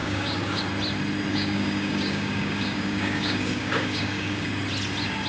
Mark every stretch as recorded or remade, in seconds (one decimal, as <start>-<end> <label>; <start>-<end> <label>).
0.0-0.6 remade; 0.6-1.3 recorded; 1.3-4.5 remade; 4.5-5.3 recorded